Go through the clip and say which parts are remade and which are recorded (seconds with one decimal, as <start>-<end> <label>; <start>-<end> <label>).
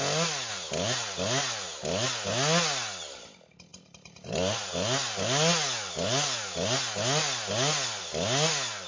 0.0-8.9 recorded